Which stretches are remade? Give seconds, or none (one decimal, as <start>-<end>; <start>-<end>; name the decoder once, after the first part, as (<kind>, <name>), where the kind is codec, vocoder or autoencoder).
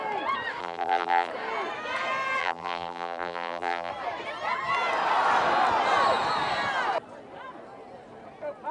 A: 0.6-1.3 (vocoder, BigVGAN v2); 2.4-3.9